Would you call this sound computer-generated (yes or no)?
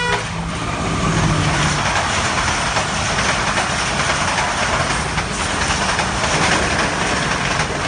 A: no